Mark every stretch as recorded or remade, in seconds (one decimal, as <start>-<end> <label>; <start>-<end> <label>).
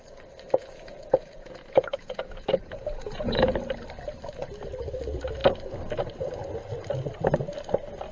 0.0-0.6 recorded; 0.6-3.5 remade; 3.5-8.1 recorded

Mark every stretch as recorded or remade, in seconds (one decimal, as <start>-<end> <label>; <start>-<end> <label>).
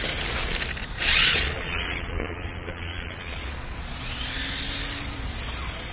0.0-0.8 recorded; 0.8-4.3 remade; 4.3-5.9 recorded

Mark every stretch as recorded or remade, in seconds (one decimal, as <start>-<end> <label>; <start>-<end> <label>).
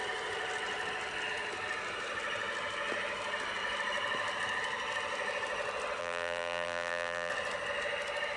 0.0-6.0 recorded; 6.0-7.3 remade; 7.3-8.4 recorded